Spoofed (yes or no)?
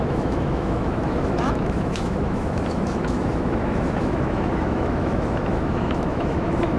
yes